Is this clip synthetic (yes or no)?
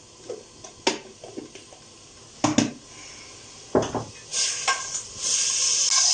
no